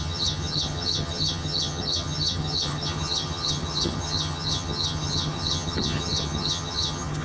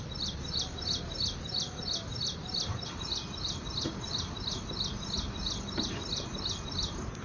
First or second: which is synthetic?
first